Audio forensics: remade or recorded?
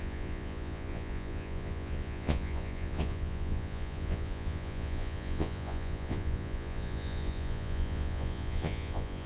remade